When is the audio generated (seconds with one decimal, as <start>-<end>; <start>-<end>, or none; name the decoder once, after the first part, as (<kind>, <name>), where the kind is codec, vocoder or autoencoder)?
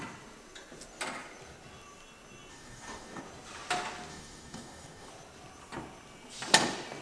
2.5-3.2 (codec, DAC); 4.1-5.1